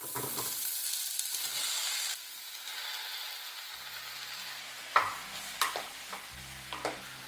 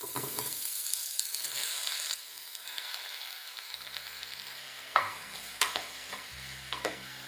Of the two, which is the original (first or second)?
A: first